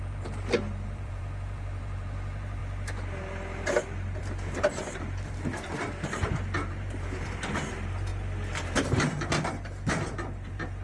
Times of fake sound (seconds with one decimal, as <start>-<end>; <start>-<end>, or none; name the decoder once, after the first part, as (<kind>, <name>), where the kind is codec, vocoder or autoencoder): 0.0-2.6 (vocoder, BigVGAN v2); 4.2-8.1; 9.9-10.8